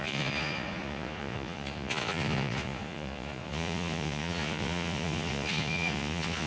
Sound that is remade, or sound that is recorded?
remade